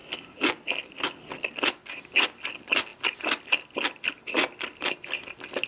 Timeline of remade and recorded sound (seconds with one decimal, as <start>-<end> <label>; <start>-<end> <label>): 0.0-5.7 recorded